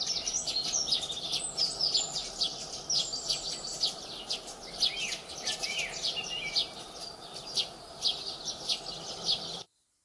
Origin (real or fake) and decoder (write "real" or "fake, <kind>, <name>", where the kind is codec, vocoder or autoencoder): real